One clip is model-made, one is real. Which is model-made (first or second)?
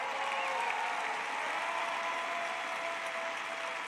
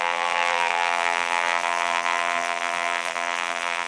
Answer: second